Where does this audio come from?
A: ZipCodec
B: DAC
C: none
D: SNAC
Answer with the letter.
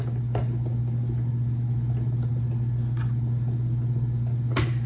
C